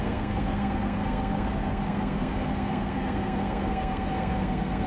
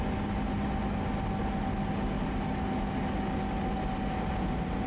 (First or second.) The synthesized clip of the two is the first